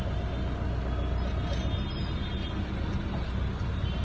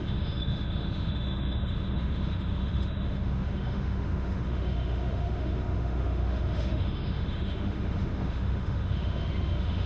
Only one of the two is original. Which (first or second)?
first